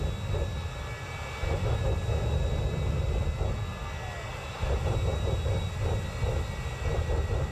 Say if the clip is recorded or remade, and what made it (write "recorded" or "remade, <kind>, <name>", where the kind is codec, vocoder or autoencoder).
recorded